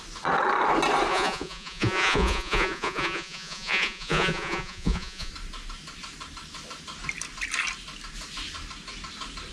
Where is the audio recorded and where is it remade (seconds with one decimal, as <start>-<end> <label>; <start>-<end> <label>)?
0.0-1.1 recorded; 1.1-5.3 remade; 5.3-9.5 recorded